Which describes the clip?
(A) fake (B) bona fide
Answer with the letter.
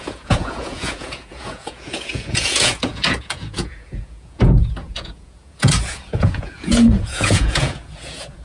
A